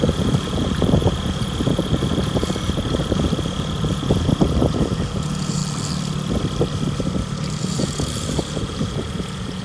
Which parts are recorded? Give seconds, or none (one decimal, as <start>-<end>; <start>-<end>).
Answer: 5.6-7.6